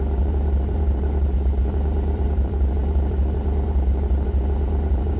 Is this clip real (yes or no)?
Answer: no